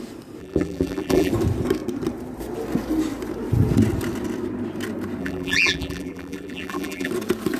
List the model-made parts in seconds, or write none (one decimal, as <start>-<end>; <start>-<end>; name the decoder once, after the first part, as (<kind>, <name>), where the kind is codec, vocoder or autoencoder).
0.4-1.3 (vocoder, BigVGAN v2); 5.2-7.1